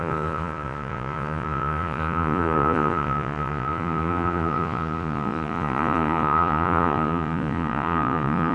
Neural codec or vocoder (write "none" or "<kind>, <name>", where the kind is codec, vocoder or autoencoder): vocoder, Vocos